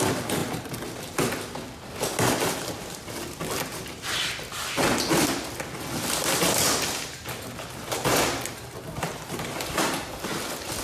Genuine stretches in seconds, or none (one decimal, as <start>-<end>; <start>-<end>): 0.0-10.8